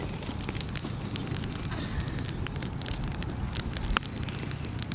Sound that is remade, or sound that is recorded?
recorded